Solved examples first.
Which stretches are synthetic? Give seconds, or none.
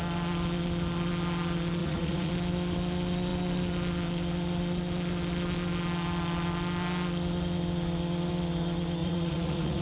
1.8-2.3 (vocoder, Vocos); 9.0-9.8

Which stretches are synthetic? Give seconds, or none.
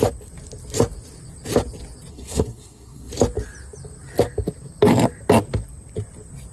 2.1-3.1 (codec, SNAC)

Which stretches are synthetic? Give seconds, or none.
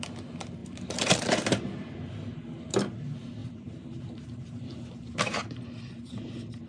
0.6-2.4 (vocoder, BigVGAN v2); 3.4-5.7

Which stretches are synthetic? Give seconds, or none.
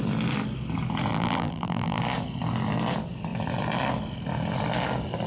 1.1-2.0 (vocoder, BigVGAN v2)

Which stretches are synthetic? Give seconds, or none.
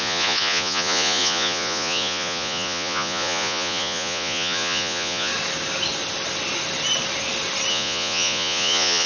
0.0-5.3 (vocoder, Vocos); 7.7-9.1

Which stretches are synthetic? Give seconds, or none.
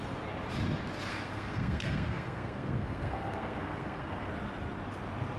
1.1-4.3 (codec, SNAC)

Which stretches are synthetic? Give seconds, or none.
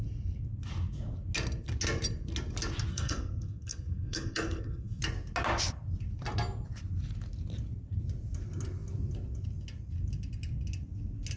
2.9-5.0 (codec, SNAC)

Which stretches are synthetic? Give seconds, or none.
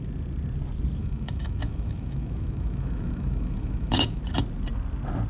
1.0-4.2 (autoencoder, DAC-VAE)